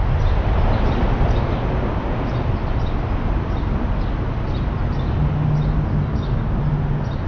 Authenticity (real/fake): real